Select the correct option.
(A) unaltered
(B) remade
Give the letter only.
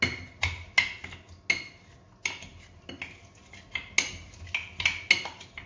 A